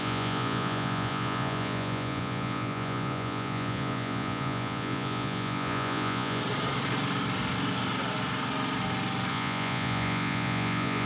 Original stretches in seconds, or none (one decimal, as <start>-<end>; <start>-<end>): 6.4-9.3